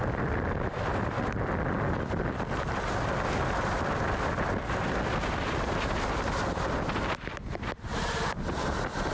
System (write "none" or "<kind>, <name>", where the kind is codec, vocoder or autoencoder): none